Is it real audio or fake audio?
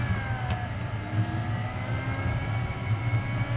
real